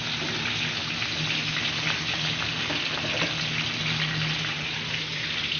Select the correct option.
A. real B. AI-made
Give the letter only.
A